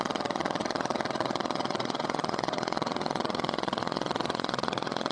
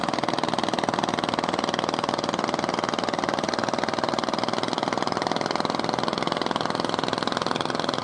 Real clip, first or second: second